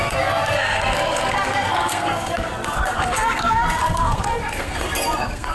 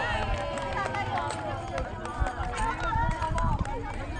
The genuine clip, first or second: second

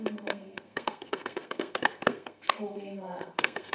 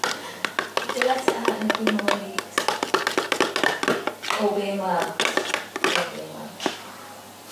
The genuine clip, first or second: second